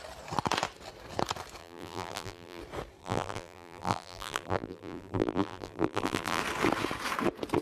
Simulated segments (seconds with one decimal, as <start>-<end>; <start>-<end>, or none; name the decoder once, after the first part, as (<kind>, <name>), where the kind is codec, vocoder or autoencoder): 1.6-2.6 (vocoder, BigVGAN v2); 3.0-6.4